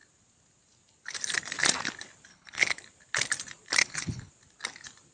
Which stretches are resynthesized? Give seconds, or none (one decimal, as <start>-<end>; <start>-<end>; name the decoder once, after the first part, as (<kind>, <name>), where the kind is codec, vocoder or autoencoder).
2.3-2.8 (codec, HILCodec); 3.8-4.3